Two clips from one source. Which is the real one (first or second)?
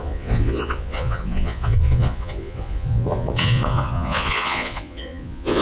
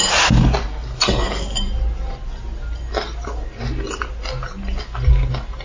second